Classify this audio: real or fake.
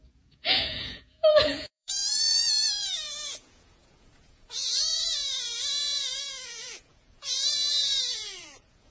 fake